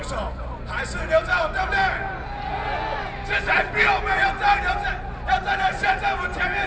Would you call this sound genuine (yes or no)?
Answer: yes